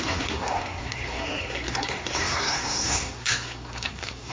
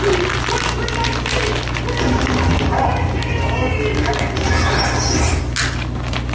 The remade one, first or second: first